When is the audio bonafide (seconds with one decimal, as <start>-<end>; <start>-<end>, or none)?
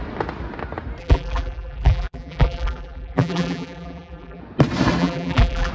0.0-1.0; 4.4-5.0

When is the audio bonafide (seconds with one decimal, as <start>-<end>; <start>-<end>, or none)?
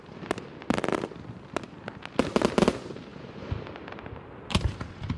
0.0-3.1